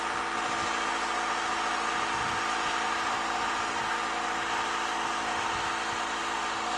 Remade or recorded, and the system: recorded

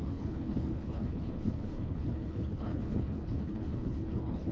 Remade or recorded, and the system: remade, codec, HILCodec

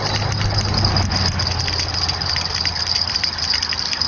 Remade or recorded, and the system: recorded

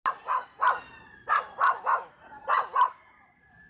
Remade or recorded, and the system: recorded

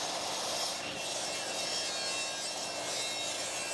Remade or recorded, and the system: recorded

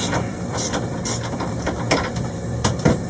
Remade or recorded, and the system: remade, vocoder, BigVGAN v2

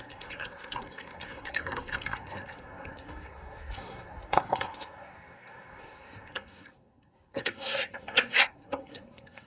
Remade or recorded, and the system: remade, codec, SNAC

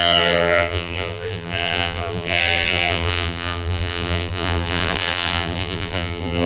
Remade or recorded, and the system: remade, vocoder, BigVGAN v2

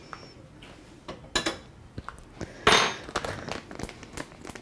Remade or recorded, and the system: recorded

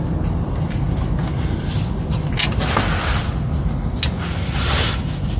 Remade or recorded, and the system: recorded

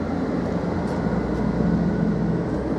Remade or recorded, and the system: recorded